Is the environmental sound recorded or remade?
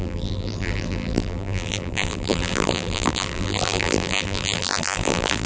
remade